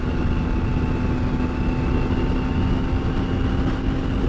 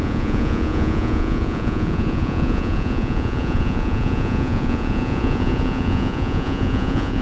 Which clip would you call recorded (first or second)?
first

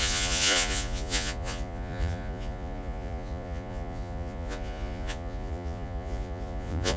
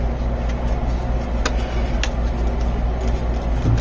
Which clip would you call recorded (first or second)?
second